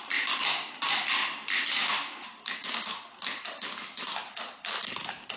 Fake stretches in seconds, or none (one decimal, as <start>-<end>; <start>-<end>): none